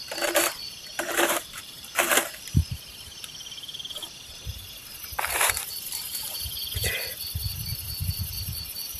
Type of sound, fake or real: fake